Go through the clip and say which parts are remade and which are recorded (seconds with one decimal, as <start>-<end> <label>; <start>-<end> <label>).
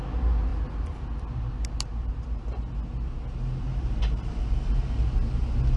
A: 0.0-5.8 recorded